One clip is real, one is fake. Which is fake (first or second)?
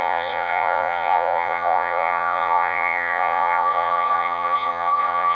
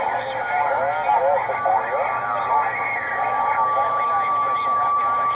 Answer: first